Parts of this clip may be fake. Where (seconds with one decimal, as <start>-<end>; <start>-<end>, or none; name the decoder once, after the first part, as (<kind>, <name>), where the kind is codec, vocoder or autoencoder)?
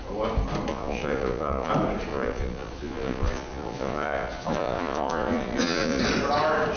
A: 0.7-1.7 (vocoder, Vocos); 2.1-6.0